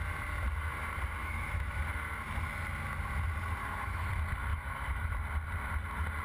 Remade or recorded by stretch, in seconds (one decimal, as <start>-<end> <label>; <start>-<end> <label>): 0.0-1.2 recorded; 1.2-1.8 remade; 1.8-3.6 recorded; 3.6-4.1 remade; 4.1-4.5 recorded; 4.5-5.1 remade; 5.1-6.2 recorded